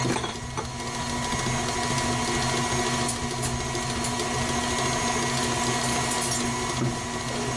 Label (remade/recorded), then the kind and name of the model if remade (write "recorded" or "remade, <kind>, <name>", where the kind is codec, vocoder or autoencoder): recorded